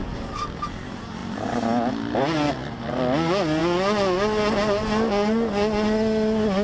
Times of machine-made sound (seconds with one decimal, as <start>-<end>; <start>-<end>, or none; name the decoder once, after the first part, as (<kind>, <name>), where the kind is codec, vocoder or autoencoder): none